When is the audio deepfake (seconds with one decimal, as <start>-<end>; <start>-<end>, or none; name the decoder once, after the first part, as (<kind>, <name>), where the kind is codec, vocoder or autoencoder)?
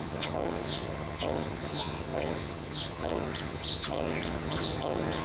0.0-5.2 (vocoder, HiFi-GAN)